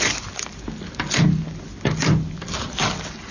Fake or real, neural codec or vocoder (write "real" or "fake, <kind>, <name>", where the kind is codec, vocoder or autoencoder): real